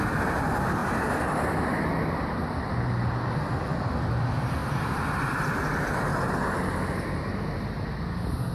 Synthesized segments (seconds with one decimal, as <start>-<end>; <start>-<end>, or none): 4.6-5.6